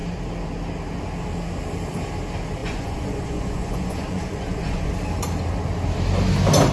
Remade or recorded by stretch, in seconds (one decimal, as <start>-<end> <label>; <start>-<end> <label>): 0.0-2.6 recorded; 2.6-4.9 remade; 4.9-6.7 recorded